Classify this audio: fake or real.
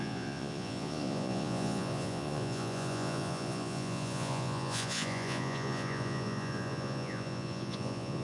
fake